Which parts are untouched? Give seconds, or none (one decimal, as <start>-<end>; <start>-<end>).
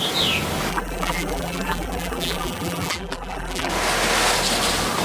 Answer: 0.0-0.7; 3.7-5.0